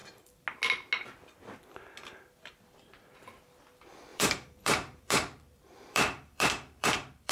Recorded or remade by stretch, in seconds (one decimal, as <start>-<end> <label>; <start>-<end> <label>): 0.0-4.1 recorded; 4.1-7.3 remade